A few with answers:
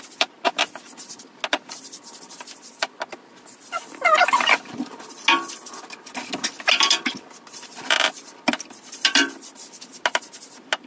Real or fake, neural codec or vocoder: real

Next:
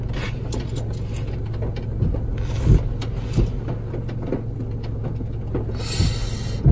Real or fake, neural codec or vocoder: real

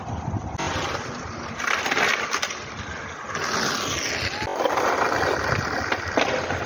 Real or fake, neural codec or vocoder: real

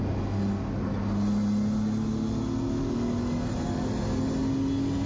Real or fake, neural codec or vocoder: real